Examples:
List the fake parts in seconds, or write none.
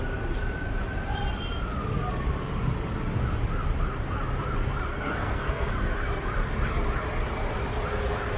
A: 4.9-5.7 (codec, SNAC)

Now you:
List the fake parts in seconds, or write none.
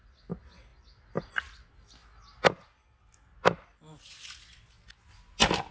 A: none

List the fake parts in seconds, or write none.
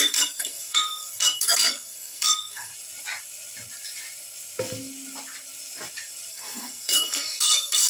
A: 0.0-2.7 (codec, SNAC); 6.3-7.9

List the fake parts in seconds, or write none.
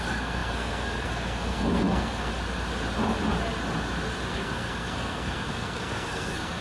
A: 0.0-2.3 (codec, SNAC); 4.3-6.6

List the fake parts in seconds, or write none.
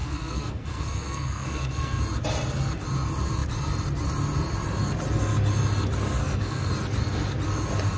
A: 0.0-2.0 (codec, SNAC); 6.2-6.7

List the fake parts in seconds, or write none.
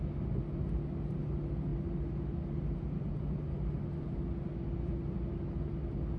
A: none